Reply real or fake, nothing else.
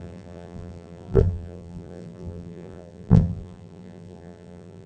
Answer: fake